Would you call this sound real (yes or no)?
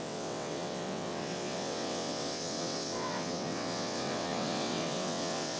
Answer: no